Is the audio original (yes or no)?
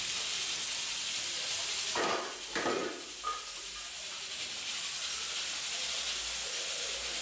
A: yes